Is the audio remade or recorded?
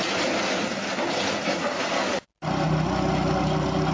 recorded